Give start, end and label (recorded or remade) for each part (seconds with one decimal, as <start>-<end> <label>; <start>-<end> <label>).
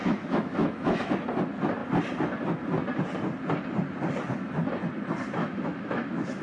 0.0-1.1 remade; 1.1-5.4 recorded; 5.4-6.4 remade